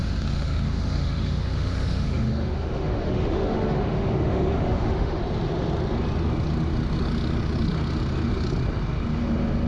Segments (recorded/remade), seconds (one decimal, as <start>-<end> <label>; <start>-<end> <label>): 0.0-5.2 remade; 5.2-9.7 recorded